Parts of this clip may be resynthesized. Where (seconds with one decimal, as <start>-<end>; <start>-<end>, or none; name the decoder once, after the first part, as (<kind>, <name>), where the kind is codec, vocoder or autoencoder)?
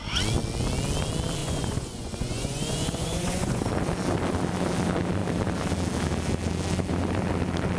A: 1.4-3.7 (vocoder, Vocos)